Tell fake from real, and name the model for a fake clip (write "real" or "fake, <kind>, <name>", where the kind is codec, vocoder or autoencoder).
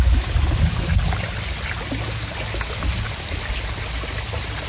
real